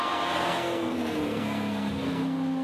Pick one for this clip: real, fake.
fake